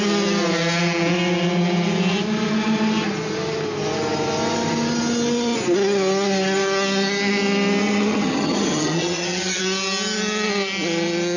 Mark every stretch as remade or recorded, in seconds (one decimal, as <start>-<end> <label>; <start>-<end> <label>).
0.0-7.8 recorded; 7.8-9.6 remade; 9.6-11.4 recorded